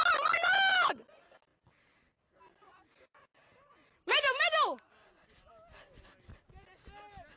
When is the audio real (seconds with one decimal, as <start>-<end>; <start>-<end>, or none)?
0.0-7.4